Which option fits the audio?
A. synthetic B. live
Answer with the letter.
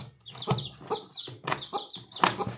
B